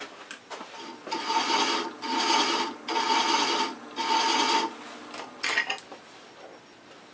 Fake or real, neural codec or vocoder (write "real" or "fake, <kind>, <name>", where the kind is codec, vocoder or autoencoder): real